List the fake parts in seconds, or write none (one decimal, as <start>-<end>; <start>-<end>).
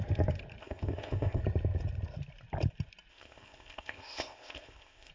0.6-1.4; 3.1-5.1